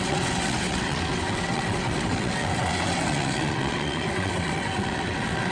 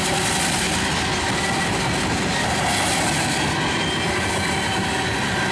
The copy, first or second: first